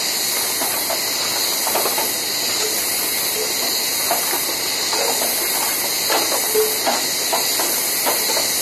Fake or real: real